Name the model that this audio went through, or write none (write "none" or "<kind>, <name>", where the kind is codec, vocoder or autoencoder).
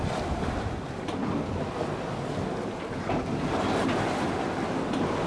none